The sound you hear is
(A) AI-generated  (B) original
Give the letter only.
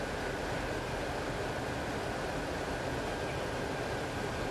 B